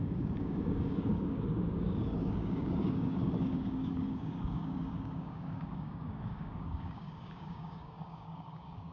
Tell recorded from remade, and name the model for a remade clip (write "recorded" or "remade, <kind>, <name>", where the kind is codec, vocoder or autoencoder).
remade, codec, DAC